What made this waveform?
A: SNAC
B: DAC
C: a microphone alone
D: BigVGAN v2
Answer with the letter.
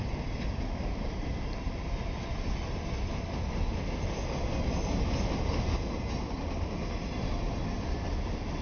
C